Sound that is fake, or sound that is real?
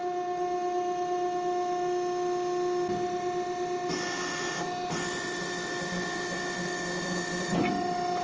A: real